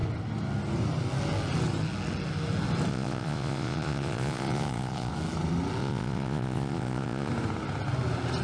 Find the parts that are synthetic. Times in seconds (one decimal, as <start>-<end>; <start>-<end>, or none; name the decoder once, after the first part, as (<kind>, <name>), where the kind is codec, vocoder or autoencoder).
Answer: 2.9-5.1 (vocoder, Vocos); 5.8-7.3